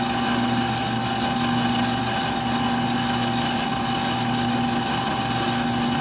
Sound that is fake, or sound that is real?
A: real